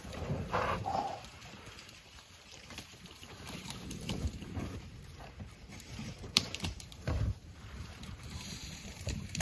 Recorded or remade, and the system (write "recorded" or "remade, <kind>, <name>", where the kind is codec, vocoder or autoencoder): remade, vocoder, BigVGAN v2